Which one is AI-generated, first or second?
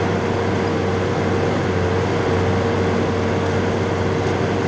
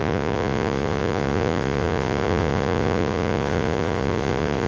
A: second